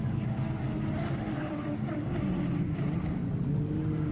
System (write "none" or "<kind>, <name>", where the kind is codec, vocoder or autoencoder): none